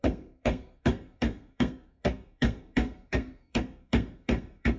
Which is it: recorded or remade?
remade